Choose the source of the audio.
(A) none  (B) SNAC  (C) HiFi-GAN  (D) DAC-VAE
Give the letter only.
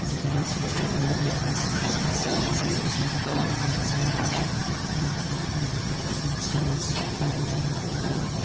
C